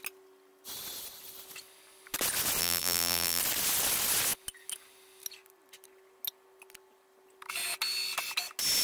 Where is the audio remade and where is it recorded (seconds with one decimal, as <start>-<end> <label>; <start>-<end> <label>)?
0.0-2.6 recorded; 2.6-3.4 remade; 3.4-8.8 recorded